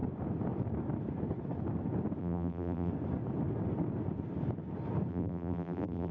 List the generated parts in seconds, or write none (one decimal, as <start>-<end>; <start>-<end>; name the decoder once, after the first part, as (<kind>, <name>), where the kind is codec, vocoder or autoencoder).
2.2-2.9 (vocoder, BigVGAN v2); 5.1-6.1